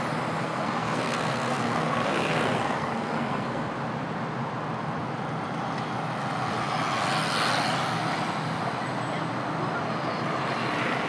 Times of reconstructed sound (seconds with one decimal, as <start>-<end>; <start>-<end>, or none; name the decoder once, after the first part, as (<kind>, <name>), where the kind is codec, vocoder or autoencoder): 0.4-3.7 (codec, SNAC)